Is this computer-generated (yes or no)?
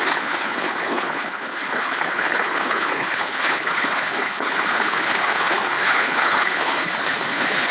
yes